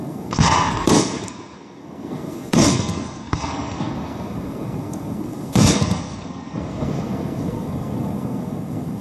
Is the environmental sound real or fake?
fake